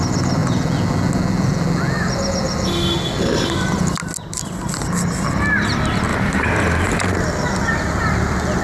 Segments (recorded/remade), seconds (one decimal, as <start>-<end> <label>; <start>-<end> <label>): 0.0-6.1 recorded; 6.1-7.2 remade; 7.2-8.6 recorded